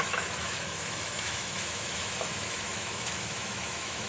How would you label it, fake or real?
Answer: fake